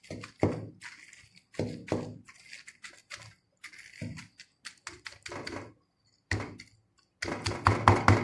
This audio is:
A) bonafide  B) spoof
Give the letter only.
A